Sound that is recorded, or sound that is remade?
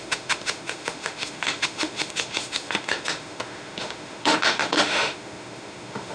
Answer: remade